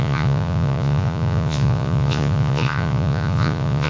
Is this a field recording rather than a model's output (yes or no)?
no